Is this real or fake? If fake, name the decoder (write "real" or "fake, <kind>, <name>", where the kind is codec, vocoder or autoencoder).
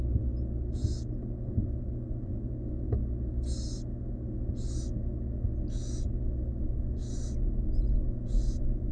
real